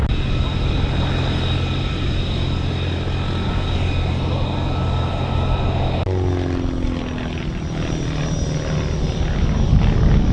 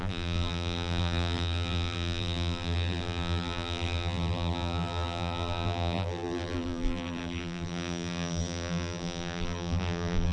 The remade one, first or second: second